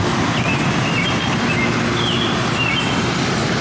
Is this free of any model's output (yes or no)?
yes